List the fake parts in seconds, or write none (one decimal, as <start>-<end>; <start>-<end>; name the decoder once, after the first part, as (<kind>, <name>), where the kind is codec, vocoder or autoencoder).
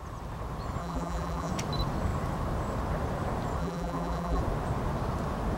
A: 0.8-1.5 (vocoder, BigVGAN v2); 3.6-4.4